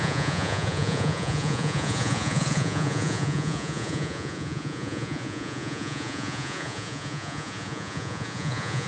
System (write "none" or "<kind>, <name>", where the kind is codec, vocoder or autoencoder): vocoder, Vocos